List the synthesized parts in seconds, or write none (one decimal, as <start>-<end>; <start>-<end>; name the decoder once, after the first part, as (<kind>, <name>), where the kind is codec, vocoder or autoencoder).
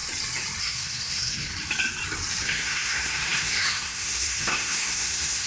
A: 0.6-1.5 (codec, SNAC); 2.4-5.5